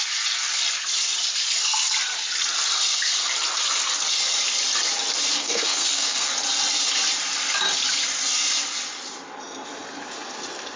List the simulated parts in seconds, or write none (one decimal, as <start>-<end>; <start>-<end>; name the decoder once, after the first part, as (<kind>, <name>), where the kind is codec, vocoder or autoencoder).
5.4-6.3 (codec, SNAC)